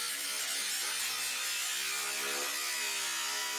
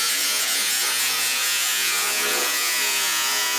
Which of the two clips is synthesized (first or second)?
second